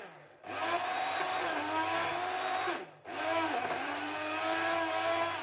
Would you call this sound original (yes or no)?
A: yes